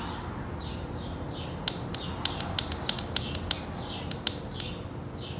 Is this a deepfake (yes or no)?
no